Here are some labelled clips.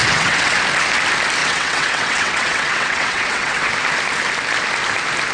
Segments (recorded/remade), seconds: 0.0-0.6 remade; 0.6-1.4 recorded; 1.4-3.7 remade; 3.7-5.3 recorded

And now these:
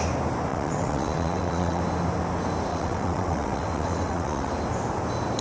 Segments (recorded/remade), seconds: 0.0-0.5 recorded; 0.5-1.8 remade; 1.8-2.7 recorded; 2.7-4.5 remade; 4.5-5.4 recorded